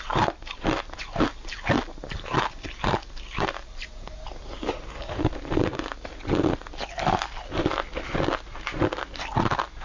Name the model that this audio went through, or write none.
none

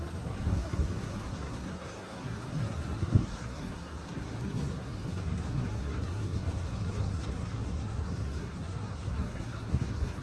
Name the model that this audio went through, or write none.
codec, SNAC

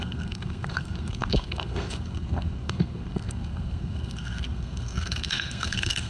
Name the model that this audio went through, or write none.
codec, SNAC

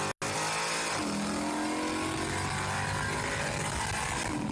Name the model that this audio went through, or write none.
none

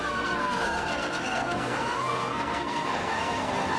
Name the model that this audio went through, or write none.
codec, SNAC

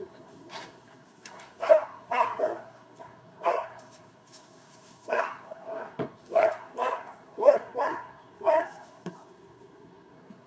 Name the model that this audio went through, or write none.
codec, SNAC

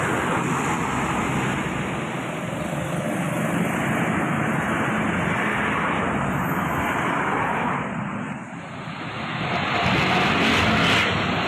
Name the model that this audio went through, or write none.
none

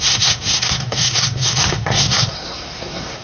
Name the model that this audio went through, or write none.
codec, SNAC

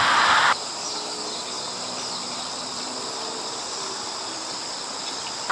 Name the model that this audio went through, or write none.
none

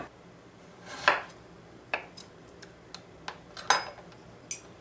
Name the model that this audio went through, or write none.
none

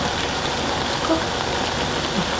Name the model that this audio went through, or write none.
none